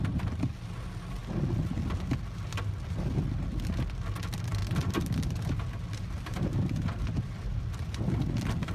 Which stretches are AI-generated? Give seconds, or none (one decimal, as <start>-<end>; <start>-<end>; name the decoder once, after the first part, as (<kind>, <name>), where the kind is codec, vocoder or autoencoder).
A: 4.6-7.7 (vocoder, BigVGAN v2)